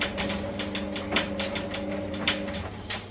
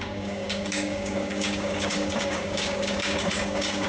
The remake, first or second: second